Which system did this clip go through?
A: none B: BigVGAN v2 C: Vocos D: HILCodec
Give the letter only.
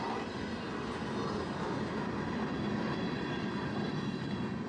A